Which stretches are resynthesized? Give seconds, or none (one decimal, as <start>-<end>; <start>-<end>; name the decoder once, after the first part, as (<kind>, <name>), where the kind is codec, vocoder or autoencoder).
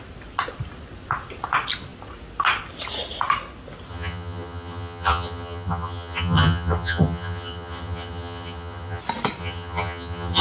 3.9-9.0 (vocoder, HiFi-GAN); 9.4-10.4